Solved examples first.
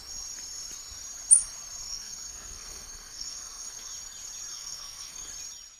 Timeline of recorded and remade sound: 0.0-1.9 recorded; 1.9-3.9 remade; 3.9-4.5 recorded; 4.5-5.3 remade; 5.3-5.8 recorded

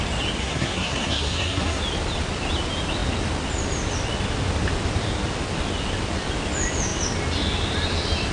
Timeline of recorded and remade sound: 0.0-0.4 recorded; 0.4-1.8 remade; 1.8-8.3 recorded

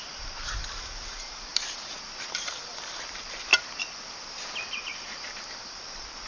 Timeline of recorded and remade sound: 0.0-1.5 remade; 1.5-2.3 recorded; 2.3-3.5 remade; 3.5-4.8 recorded; 4.8-6.3 remade

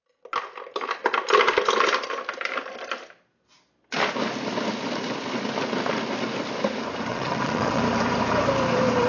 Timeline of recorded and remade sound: 0.0-7.1 recorded; 7.1-7.8 remade; 7.8-9.1 recorded

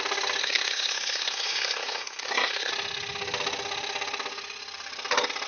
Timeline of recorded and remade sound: 0.0-0.4 recorded; 0.4-2.7 remade; 2.7-5.5 recorded

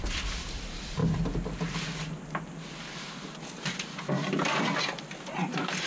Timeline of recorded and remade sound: 0.0-5.9 recorded

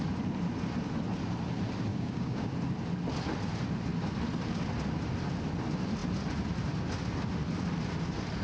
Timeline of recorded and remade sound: 0.0-1.9 recorded; 1.9-2.5 remade; 2.5-8.4 recorded